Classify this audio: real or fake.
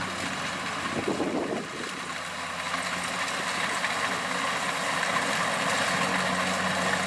real